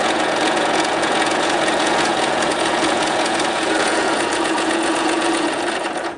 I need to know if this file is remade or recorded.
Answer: remade